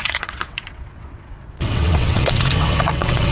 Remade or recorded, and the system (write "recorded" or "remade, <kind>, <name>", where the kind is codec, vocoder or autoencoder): remade, vocoder, WaveNeXt